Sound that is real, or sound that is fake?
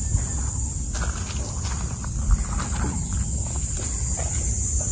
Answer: real